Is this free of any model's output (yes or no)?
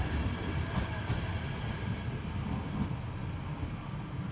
yes